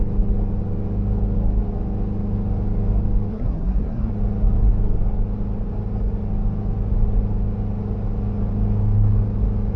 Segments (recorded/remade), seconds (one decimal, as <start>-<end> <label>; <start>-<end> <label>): 0.0-3.3 recorded; 3.3-4.1 remade; 4.1-9.8 recorded

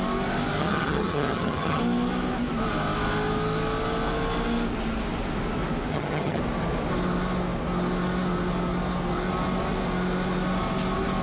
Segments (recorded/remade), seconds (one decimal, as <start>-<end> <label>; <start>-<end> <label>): 0.0-0.6 recorded; 0.6-1.8 remade; 1.8-5.9 recorded; 5.9-6.4 remade; 6.4-11.2 recorded

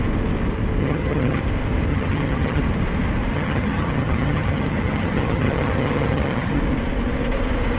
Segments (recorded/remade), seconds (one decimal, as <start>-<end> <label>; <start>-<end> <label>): 0.0-0.8 recorded; 0.8-1.4 remade; 1.4-1.9 recorded; 1.9-2.6 remade; 2.6-3.3 recorded; 3.3-6.6 remade; 6.6-7.8 recorded

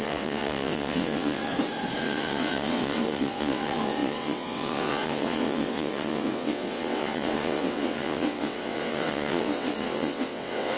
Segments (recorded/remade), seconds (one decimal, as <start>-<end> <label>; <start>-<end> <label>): 0.0-1.5 remade; 1.5-2.0 recorded; 2.0-10.8 remade

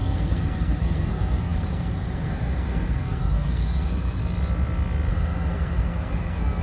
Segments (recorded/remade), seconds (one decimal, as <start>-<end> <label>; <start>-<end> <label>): 0.0-4.2 remade; 4.2-5.1 recorded; 5.1-6.6 remade

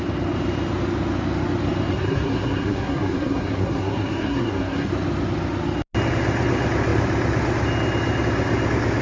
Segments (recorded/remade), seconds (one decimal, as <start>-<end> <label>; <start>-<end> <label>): 0.0-1.9 recorded; 1.9-4.9 remade; 4.9-9.0 recorded

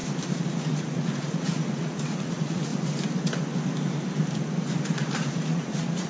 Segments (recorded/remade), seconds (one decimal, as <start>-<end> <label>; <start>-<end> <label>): 0.0-0.5 recorded; 0.5-2.7 remade; 2.7-5.3 recorded; 5.3-6.1 remade

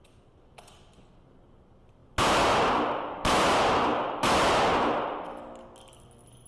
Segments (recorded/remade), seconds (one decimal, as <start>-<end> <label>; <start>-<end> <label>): 0.0-6.5 recorded